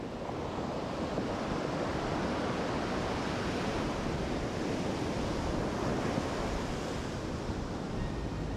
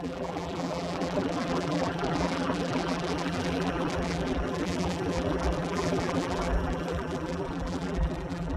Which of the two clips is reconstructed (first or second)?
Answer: second